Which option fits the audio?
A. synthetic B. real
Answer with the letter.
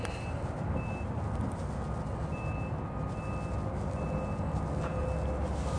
B